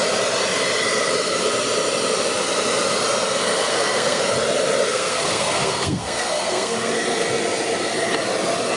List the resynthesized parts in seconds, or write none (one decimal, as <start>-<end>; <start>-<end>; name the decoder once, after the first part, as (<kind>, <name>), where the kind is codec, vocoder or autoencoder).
3.7-4.2 (codec, SNAC); 4.9-6.9